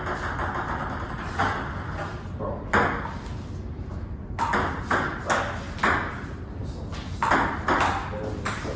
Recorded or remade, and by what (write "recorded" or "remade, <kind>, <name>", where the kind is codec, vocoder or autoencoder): recorded